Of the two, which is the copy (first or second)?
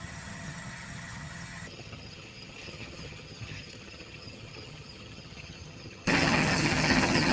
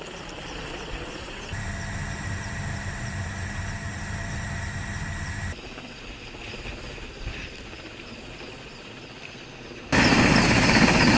first